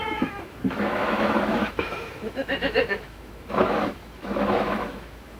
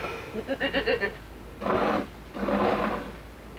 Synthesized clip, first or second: first